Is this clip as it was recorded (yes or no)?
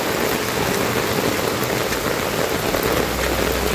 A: yes